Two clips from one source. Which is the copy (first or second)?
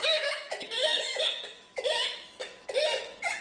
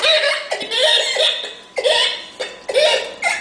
first